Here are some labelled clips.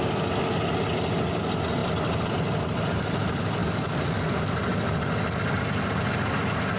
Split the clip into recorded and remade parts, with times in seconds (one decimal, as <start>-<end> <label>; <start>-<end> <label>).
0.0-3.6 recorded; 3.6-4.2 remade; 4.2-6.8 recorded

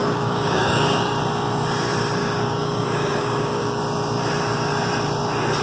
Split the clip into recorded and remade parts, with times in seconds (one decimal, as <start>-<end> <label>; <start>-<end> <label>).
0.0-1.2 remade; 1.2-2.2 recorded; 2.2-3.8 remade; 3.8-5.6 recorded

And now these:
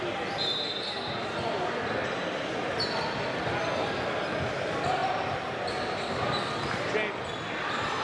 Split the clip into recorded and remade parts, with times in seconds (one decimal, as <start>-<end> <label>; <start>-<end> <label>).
0.0-8.0 recorded

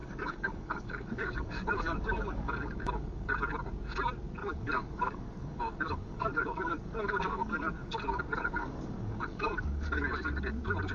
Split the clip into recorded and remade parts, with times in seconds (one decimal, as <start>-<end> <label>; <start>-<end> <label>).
0.0-3.3 remade; 3.3-4.4 recorded; 4.4-8.2 remade; 8.2-8.6 recorded; 8.6-10.3 remade; 10.3-10.9 recorded

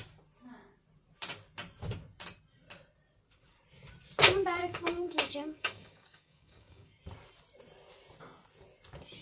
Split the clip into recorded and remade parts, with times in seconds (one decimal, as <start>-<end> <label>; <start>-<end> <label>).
0.0-4.6 recorded; 4.6-7.0 remade; 7.0-9.2 recorded

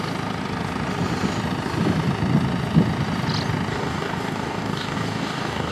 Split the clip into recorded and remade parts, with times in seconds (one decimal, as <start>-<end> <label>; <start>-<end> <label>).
0.0-3.7 recorded; 3.7-5.7 remade